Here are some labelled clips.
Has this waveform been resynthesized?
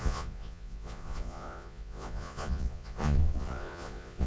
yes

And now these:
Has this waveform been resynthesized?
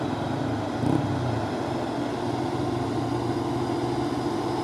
no